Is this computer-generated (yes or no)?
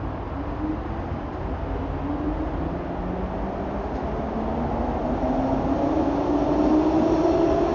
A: no